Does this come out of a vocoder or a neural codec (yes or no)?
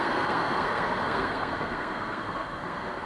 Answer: yes